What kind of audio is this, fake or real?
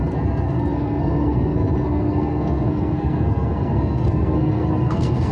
fake